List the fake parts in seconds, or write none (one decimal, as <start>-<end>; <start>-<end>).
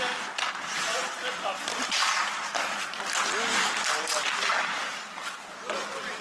none